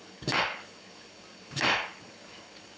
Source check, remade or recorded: remade